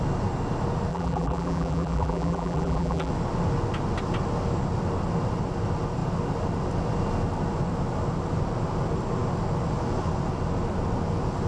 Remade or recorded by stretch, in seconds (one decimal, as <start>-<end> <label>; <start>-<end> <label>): 0.0-0.9 recorded; 0.9-3.1 remade; 3.1-11.5 recorded